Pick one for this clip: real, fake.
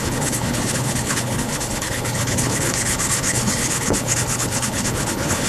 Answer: fake